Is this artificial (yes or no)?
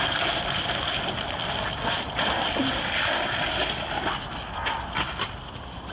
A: no